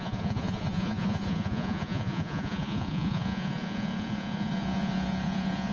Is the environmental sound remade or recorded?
remade